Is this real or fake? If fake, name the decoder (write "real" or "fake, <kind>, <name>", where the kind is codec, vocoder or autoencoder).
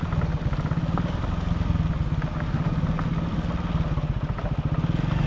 real